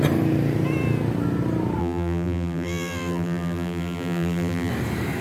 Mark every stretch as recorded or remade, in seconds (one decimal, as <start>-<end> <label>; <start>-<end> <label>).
0.0-1.8 recorded; 1.8-4.7 remade; 4.7-5.2 recorded